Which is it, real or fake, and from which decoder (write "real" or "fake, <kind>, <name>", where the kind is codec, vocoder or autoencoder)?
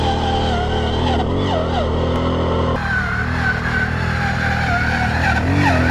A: real